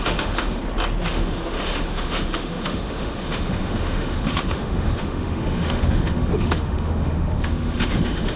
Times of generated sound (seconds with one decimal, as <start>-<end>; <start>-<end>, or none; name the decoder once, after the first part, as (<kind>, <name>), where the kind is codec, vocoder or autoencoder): 0.0-0.6 (autoencoder, DAC-VAE); 1.1-8.4